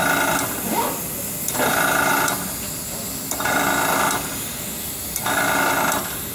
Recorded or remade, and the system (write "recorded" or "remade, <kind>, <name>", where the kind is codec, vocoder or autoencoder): recorded